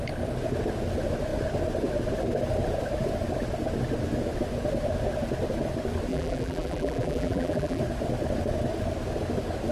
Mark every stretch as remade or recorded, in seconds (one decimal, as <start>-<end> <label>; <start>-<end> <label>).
0.0-6.1 recorded; 6.1-7.8 remade; 7.8-9.7 recorded